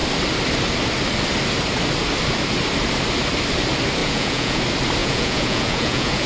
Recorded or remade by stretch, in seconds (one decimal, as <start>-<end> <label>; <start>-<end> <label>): 0.0-4.0 recorded; 4.0-4.6 remade; 4.6-5.0 recorded; 5.0-6.3 remade